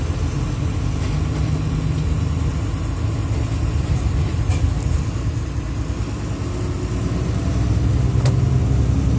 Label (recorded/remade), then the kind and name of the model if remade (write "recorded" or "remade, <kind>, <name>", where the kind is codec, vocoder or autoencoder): recorded